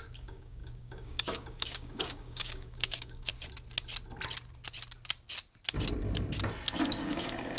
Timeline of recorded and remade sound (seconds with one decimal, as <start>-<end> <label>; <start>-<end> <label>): 0.0-3.3 remade; 3.3-6.9 recorded; 6.9-7.6 remade